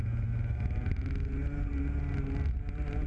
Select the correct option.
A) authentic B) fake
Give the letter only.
A